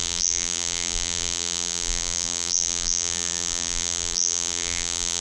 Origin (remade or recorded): remade